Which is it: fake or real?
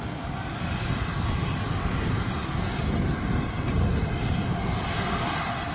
real